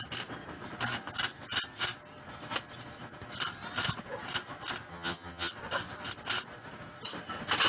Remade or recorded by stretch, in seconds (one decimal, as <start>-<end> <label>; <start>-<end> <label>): 0.0-4.9 recorded; 4.9-5.5 remade; 5.5-7.7 recorded